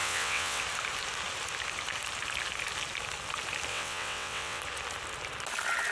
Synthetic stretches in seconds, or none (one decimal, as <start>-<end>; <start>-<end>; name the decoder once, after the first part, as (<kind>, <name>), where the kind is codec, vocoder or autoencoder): 0.0-0.6 (vocoder, WaveNeXt); 3.7-4.6